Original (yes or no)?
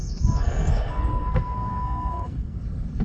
no